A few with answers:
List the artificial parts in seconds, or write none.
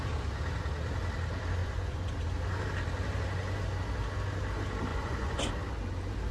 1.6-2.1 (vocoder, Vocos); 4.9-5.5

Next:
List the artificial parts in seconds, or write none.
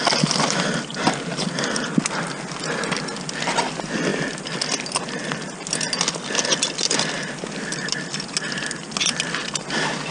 none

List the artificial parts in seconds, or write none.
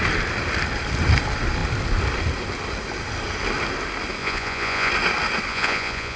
4.2-4.9 (vocoder, Vocos); 5.5-6.2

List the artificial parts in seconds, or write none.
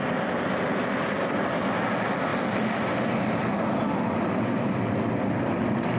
none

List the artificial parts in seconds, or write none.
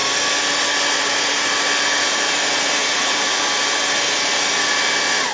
2.8-3.4 (vocoder, Vocos)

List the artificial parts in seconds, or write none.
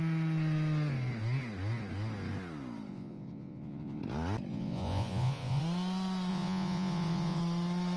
2.9-4.0 (vocoder, Vocos); 4.5-5.6; 6.3-7.4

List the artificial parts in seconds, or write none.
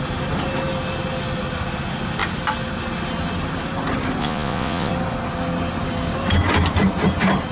4.2-4.9 (vocoder, Vocos)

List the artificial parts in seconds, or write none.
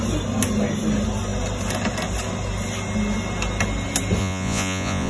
4.2-5.1 (vocoder, Vocos)